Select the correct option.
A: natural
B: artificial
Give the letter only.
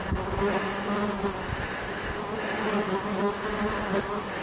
A